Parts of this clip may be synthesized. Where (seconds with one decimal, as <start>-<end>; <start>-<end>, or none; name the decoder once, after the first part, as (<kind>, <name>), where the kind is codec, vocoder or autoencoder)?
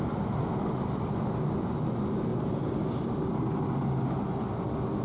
2.3-3.3 (vocoder, BigVGAN v2)